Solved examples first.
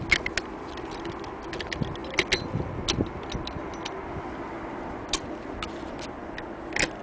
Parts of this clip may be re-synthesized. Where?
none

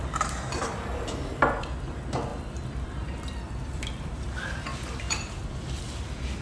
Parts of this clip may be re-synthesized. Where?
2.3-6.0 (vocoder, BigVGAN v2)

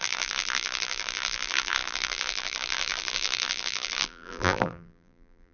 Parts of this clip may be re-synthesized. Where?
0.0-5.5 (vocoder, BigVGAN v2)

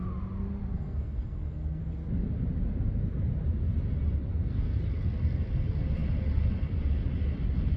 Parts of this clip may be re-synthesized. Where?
0.7-1.8 (codec, SNAC); 4.3-4.8